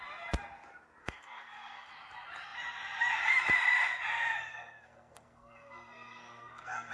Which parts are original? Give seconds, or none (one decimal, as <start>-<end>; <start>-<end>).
0.0-1.0; 1.9-4.5